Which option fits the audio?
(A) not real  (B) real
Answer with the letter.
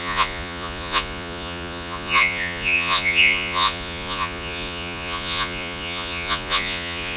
A